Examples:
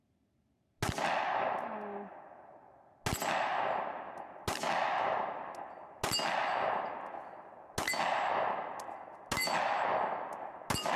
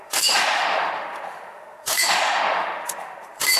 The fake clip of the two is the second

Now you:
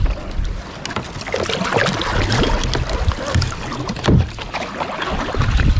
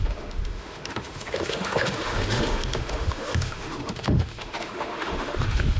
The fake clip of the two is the second